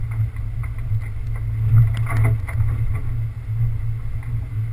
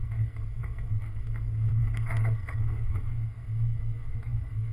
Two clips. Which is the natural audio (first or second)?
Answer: first